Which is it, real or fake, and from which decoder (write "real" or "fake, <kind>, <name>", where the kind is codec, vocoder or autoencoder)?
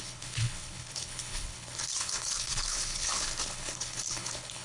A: fake, codec, HILCodec